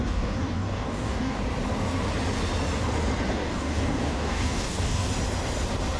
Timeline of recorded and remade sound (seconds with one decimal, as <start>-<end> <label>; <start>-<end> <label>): 0.0-1.4 remade; 1.4-3.3 recorded; 3.3-5.1 remade; 5.1-6.0 recorded

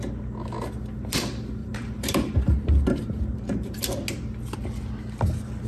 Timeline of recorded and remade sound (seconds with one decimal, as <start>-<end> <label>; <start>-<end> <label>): 0.0-1.6 recorded; 1.6-3.8 remade; 3.8-5.7 recorded

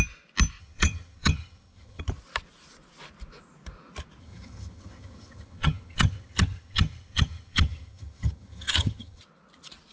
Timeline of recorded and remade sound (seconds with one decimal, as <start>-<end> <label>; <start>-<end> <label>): 0.0-0.6 recorded; 0.6-2.0 remade; 2.0-4.2 recorded; 4.2-9.2 remade; 9.2-9.9 recorded

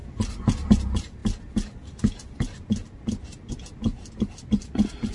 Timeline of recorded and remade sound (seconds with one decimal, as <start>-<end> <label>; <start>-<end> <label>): 0.0-5.1 recorded